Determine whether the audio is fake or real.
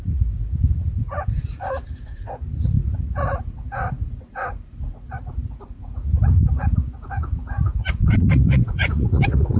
fake